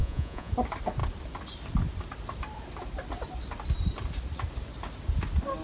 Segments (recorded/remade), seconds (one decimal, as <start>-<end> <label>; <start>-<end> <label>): 0.0-0.5 remade; 0.5-5.6 recorded